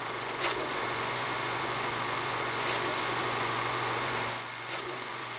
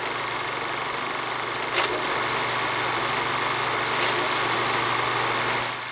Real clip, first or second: second